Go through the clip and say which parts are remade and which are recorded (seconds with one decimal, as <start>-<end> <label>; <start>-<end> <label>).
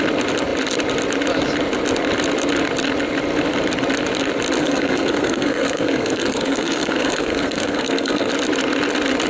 0.0-4.6 recorded; 4.6-8.3 remade; 8.3-9.3 recorded